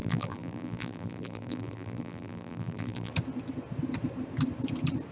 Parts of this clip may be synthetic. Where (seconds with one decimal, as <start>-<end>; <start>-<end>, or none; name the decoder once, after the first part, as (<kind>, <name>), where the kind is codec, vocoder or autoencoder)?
0.0-3.1 (vocoder, BigVGAN v2)